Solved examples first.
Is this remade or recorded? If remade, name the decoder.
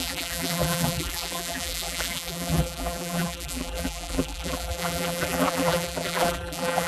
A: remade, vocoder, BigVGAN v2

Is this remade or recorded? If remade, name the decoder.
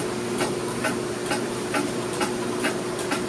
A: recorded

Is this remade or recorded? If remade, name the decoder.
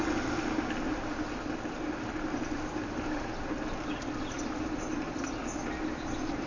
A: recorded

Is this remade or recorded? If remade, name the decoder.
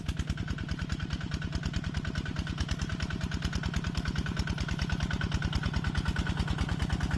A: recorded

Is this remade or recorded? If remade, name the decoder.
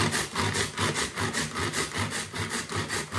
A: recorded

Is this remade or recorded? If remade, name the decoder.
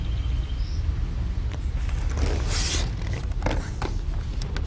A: recorded